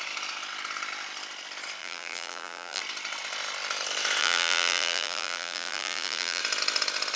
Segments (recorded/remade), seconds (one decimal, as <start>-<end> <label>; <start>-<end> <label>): 0.0-1.8 recorded; 1.8-2.8 remade; 2.8-4.2 recorded; 4.2-6.4 remade; 6.4-7.2 recorded